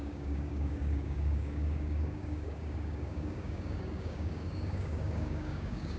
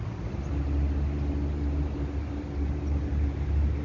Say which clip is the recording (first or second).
second